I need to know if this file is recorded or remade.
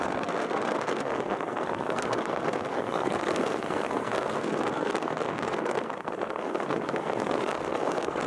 remade